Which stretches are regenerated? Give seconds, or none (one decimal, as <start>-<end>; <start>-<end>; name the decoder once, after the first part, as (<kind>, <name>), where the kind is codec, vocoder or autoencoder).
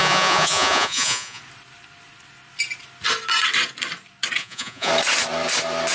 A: 0.0-1.4 (vocoder, Vocos); 4.4-4.9